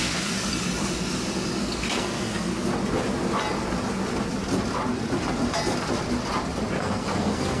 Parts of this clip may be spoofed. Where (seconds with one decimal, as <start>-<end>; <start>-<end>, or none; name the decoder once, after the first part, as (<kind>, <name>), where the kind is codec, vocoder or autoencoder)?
0.0-0.5 (codec, SNAC); 1.6-2.5; 6.8-7.6